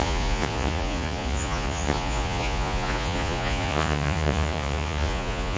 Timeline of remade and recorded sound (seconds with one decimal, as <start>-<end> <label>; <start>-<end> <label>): 0.0-5.6 remade